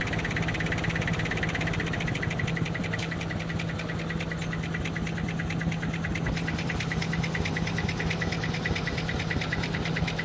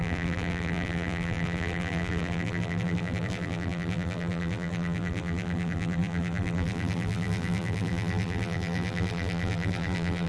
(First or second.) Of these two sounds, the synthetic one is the second